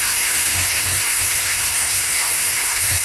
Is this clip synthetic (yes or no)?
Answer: yes